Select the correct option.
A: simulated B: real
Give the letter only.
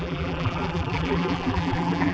A